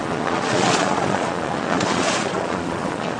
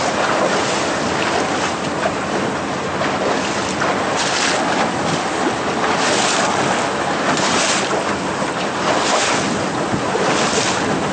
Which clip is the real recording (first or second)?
second